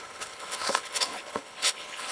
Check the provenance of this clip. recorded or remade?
remade